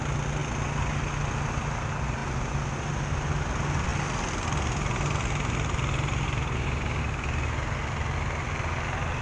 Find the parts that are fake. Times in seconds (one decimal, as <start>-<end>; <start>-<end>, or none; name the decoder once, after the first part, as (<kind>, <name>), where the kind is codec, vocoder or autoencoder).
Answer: none